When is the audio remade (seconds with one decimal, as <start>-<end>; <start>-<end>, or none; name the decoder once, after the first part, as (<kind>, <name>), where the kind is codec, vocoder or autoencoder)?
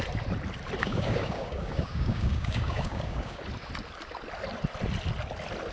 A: 0.8-3.4 (codec, DAC)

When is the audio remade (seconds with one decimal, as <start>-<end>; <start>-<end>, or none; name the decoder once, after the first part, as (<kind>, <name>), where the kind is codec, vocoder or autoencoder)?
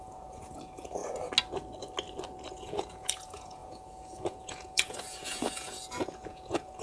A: 0.0-1.0 (vocoder, Vocos); 2.5-6.8